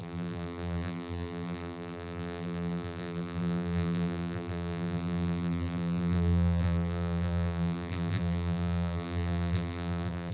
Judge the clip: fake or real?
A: fake